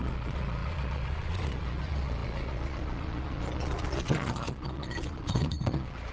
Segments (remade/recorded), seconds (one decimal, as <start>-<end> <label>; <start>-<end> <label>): 0.0-6.1 remade